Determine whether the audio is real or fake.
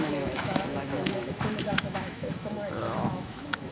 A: fake